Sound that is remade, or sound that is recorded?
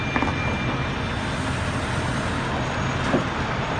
recorded